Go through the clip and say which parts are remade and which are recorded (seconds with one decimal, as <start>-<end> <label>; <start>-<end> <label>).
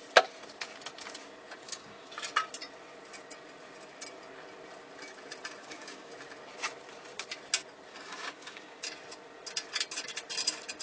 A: 0.0-1.6 recorded; 1.6-2.1 remade; 2.1-5.6 recorded; 5.6-6.1 remade; 6.1-7.9 recorded; 7.9-8.8 remade; 8.8-10.8 recorded